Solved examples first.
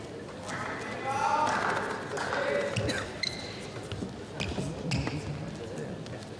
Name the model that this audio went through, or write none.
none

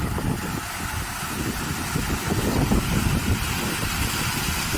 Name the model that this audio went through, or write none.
none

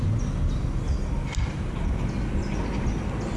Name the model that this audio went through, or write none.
none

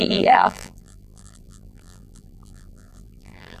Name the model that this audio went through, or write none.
vocoder, BigVGAN v2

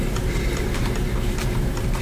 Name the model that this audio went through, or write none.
vocoder, BigVGAN v2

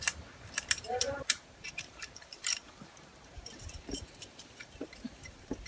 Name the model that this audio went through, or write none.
vocoder, BigVGAN v2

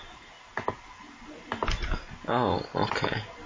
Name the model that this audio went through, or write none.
none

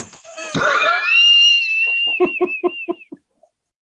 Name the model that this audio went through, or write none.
vocoder, BigVGAN v2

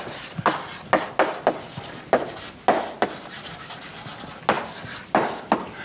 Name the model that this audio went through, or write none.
none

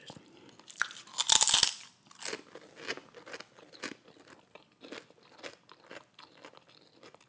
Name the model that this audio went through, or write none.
none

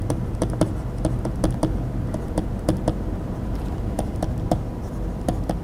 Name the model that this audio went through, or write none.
vocoder, BigVGAN v2